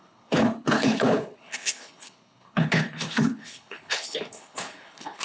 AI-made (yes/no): yes